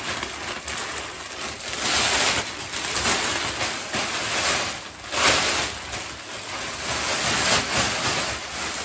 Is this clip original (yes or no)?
yes